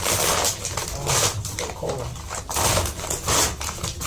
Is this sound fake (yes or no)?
no